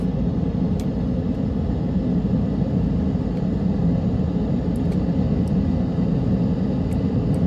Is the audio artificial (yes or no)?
no